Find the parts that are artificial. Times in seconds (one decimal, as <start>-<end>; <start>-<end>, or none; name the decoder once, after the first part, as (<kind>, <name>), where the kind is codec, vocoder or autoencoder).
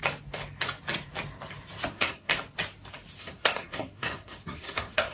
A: 1.9-2.3 (codec, SNAC); 3.2-5.1